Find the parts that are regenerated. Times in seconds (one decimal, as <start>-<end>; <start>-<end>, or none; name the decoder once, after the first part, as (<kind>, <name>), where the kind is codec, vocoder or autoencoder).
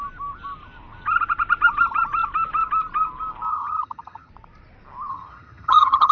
3.5-4.3 (vocoder, HiFi-GAN); 5.1-6.1